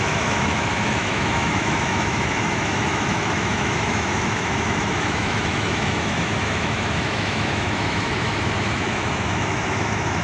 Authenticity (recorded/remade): remade